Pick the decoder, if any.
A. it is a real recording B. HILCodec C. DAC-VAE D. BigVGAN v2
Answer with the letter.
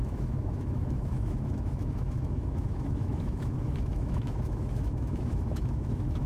C